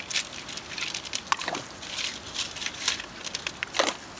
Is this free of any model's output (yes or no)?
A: yes